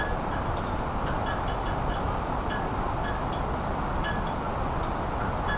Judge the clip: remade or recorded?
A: recorded